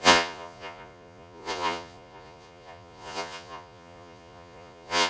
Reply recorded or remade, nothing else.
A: remade